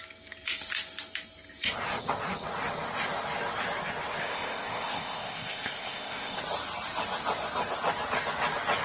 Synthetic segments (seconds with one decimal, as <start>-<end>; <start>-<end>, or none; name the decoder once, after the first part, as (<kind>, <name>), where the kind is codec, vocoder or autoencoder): 4.2-6.4 (codec, ZipCodec)